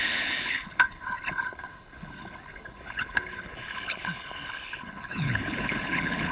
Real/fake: fake